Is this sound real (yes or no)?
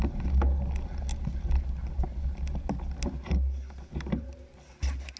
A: yes